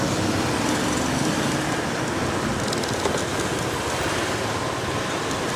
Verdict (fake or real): real